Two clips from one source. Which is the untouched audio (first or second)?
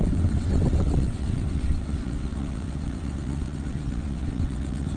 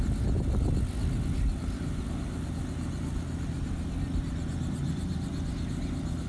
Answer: second